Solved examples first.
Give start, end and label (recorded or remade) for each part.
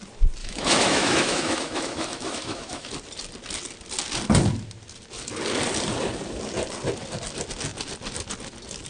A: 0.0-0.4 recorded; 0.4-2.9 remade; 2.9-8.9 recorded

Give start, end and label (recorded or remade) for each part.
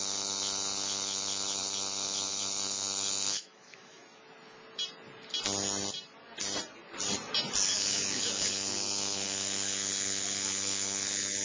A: 0.0-4.0 remade; 4.0-7.7 recorded; 7.7-11.4 remade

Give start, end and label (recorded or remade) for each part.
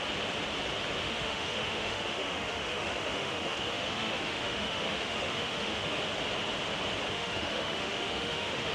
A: 0.0-1.0 recorded; 1.0-6.0 remade; 6.0-7.1 recorded; 7.1-8.7 remade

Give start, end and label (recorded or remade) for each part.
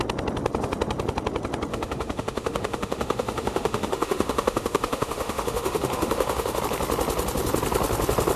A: 0.0-1.7 recorded; 1.7-6.6 remade; 6.6-8.4 recorded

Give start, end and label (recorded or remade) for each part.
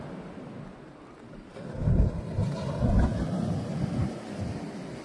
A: 0.0-5.0 recorded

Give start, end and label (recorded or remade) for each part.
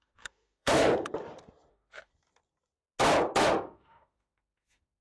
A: 0.0-0.9 remade; 0.9-1.7 recorded; 1.7-2.1 remade; 2.1-3.4 recorded; 3.4-5.0 remade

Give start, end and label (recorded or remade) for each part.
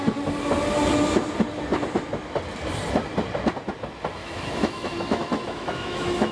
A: 0.0-4.2 recorded; 4.2-6.3 remade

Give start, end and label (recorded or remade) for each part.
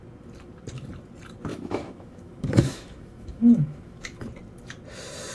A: 0.0-1.5 recorded; 1.5-4.3 remade; 4.3-5.3 recorded